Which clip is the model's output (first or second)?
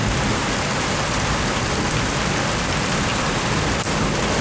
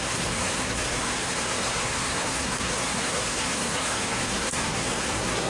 second